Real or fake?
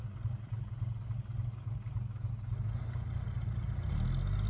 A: real